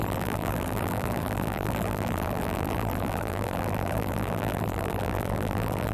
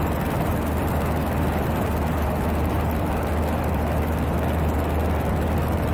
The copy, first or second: first